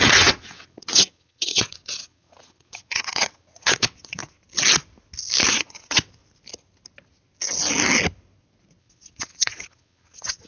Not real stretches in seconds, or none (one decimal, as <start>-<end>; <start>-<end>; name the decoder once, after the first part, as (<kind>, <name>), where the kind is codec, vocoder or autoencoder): 0.0-4.2 (vocoder, WaveNeXt); 5.5-6.2; 8.8-10.5

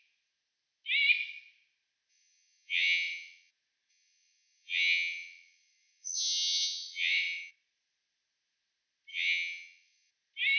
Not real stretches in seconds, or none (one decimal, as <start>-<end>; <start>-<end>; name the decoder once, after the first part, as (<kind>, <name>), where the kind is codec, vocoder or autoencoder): 2.1-3.5 (vocoder, WaveNeXt); 3.9-7.5; 9.1-10.1

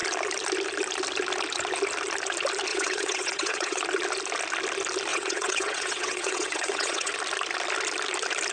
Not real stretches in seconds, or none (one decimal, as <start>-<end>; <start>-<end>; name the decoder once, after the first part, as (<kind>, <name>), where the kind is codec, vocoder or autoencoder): 2.7-3.8 (vocoder, WaveNeXt); 5.1-7.1

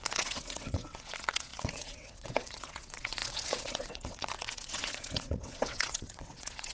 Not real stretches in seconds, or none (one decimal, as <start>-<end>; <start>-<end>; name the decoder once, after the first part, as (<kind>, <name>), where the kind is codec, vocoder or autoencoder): 0.0-6.7 (vocoder, WaveNeXt)

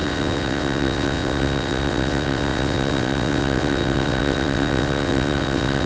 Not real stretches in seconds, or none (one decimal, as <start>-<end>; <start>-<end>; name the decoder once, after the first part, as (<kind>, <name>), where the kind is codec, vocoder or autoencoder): 0.0-5.9 (vocoder, WaveNeXt)

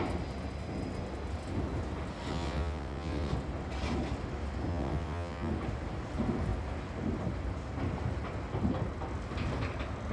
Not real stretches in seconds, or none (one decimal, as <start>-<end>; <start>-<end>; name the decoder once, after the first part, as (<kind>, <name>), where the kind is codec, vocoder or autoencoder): 2.3-3.3 (vocoder, WaveNeXt); 4.7-5.5